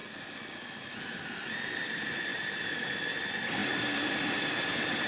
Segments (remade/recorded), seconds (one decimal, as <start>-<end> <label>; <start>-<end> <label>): 0.0-2.3 recorded; 2.3-3.0 remade; 3.0-5.1 recorded